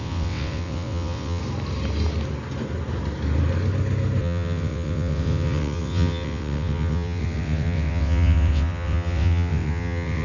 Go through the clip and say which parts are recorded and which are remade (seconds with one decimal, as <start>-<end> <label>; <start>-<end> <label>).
0.0-1.4 remade; 1.4-4.2 recorded; 4.2-10.2 remade